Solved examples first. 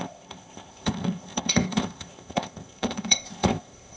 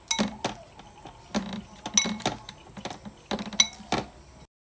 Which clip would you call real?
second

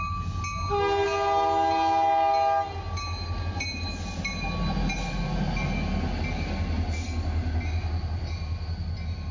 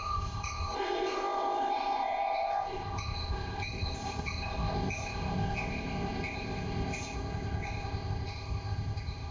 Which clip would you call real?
first